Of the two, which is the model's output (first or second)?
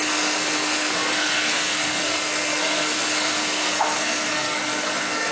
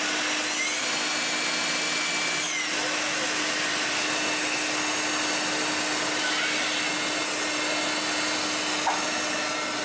first